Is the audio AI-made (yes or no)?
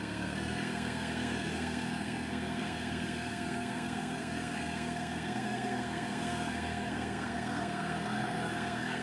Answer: yes